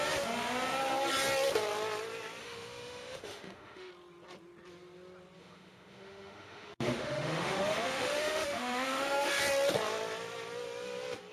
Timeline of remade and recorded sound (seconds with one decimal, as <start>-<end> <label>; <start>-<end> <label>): 0.0-2.4 recorded; 2.4-3.9 remade; 3.9-5.4 recorded; 5.4-9.4 remade; 9.4-11.3 recorded